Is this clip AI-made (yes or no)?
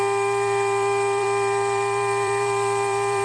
yes